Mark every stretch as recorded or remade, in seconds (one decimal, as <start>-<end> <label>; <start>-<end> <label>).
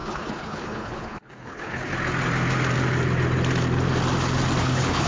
0.0-1.9 remade; 1.9-4.6 recorded; 4.6-5.1 remade